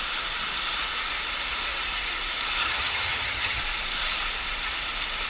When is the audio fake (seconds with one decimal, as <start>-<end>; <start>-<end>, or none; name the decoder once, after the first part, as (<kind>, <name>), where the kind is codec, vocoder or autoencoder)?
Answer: 2.6-3.6 (vocoder, HiFi-GAN)